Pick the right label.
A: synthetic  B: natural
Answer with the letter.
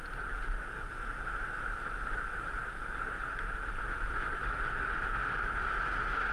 B